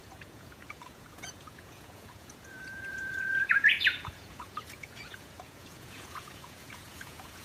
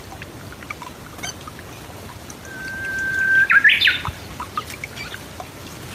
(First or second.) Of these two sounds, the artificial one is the first